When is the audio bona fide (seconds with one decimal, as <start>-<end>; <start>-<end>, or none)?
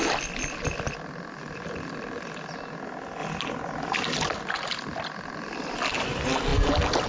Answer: 0.0-7.1